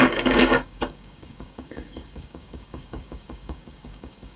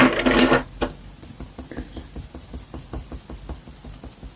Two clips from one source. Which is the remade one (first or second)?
first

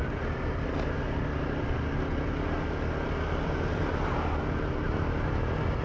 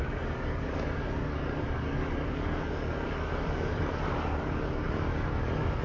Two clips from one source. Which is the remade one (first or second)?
second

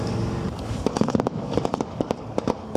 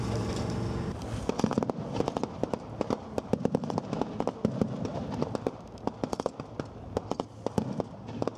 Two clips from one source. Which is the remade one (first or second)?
first